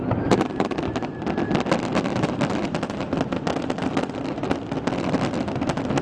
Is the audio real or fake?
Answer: real